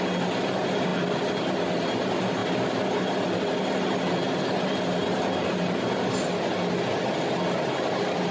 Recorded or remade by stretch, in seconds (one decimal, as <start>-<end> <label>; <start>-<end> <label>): 0.0-8.3 recorded